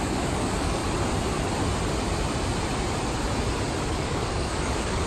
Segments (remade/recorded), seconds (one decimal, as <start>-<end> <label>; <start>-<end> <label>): 0.0-0.8 remade; 0.8-3.9 recorded; 3.9-5.1 remade